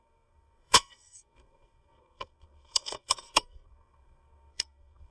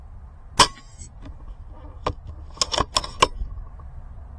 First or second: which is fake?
first